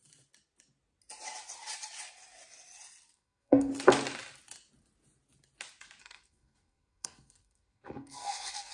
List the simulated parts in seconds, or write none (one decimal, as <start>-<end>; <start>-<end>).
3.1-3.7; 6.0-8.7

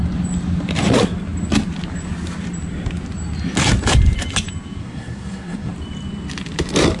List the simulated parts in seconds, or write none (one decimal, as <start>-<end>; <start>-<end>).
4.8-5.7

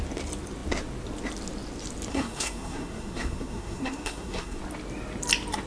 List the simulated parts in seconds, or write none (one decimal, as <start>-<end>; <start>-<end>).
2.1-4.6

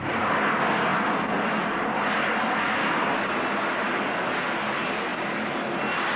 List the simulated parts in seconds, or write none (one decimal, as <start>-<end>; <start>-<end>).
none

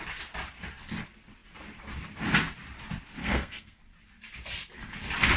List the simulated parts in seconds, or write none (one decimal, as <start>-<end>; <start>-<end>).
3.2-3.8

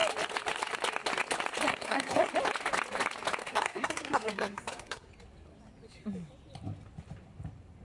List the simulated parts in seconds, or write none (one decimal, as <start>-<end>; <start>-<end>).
1.7-2.3; 3.4-5.1

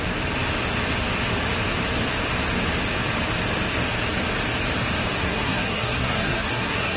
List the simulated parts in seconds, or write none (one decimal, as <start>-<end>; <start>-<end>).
5.2-7.0

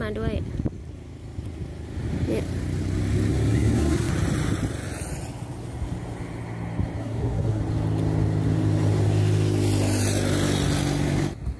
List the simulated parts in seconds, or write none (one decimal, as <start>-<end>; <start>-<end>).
3.3-4.1; 7.0-7.6